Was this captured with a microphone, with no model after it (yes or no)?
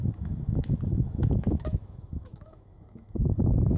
no